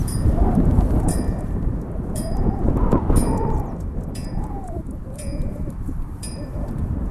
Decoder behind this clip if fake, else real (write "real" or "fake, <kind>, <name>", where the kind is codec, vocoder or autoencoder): fake, vocoder, BigVGAN v2